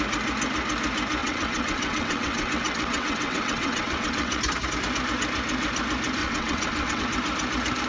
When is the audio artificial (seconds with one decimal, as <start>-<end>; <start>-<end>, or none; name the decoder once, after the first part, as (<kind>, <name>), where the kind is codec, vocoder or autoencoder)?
1.2-4.4 (vocoder, WaveNeXt); 6.2-7.0